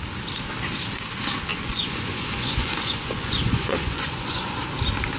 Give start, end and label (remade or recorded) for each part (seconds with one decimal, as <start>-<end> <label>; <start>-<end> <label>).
0.0-1.5 recorded; 1.5-4.6 remade; 4.6-5.2 recorded